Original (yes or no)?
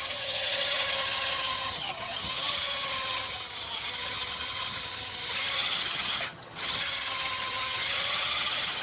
no